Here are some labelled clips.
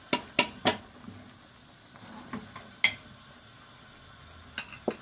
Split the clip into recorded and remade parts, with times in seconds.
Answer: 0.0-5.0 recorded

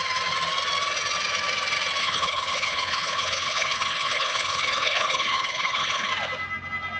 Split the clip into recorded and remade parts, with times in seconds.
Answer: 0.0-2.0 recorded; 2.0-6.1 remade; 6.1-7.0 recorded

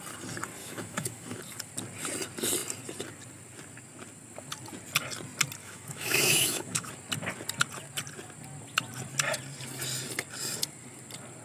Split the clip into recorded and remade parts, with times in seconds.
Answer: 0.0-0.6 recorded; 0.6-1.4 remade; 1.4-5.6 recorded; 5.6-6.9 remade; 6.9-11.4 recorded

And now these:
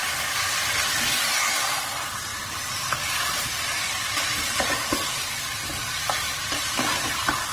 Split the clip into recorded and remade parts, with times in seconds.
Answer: 0.0-2.3 recorded; 2.3-6.8 remade; 6.8-7.5 recorded

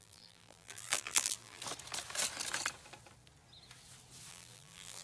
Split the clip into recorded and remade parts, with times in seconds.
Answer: 0.0-1.6 remade; 1.6-4.3 recorded; 4.3-5.0 remade